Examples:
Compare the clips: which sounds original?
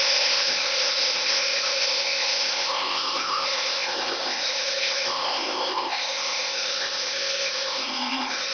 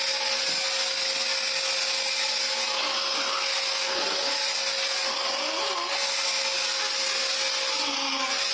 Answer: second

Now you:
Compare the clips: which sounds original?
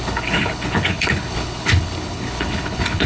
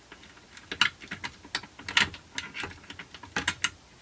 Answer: second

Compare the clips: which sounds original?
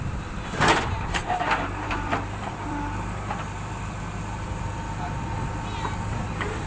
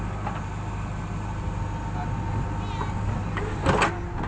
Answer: second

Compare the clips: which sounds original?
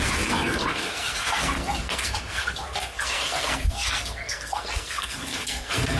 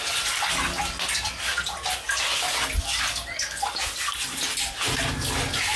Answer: second